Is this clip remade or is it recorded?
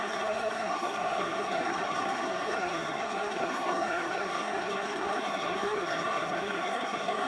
remade